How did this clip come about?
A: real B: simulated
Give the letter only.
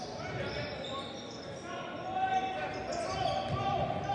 A